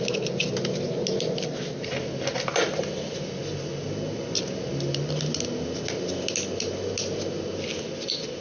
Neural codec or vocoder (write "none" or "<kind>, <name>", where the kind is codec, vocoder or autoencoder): none